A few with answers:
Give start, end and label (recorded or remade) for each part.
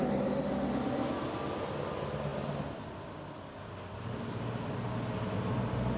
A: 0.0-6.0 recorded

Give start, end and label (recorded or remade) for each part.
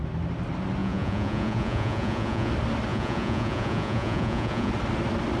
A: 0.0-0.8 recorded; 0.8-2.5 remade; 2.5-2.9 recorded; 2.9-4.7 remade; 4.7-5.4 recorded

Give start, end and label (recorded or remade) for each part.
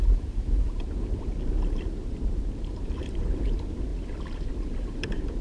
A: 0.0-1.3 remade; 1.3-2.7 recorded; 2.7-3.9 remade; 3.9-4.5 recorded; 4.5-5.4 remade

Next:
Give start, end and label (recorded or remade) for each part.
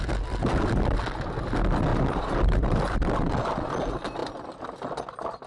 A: 0.0-1.9 recorded; 1.9-2.8 remade; 2.8-5.5 recorded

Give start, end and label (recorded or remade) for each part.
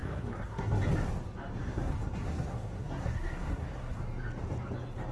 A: 0.0-0.8 remade; 0.8-1.6 recorded; 1.6-4.0 remade; 4.0-5.1 recorded